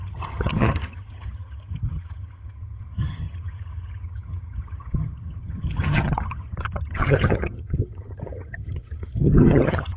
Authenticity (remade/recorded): remade